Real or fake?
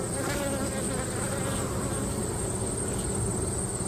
real